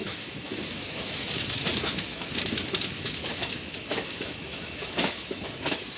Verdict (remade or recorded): remade